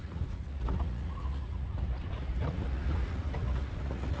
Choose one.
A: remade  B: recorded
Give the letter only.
A